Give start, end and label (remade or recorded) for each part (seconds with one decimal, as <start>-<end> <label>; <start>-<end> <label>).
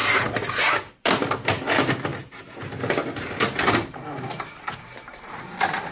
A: 0.0-1.1 remade; 1.1-5.1 recorded; 5.1-5.9 remade